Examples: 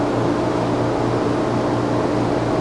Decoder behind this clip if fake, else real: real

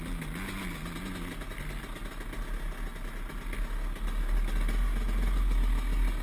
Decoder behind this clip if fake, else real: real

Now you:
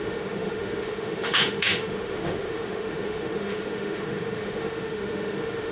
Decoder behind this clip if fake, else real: fake, autoencoder, DAC-VAE